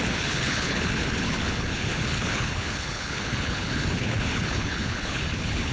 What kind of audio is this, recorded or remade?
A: remade